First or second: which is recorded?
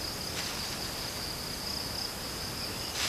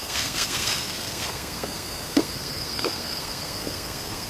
first